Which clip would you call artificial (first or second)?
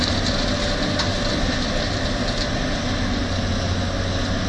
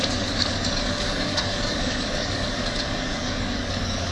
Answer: second